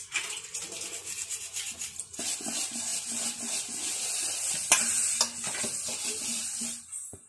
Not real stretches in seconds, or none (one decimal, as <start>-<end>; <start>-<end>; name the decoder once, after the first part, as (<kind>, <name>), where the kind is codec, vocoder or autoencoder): none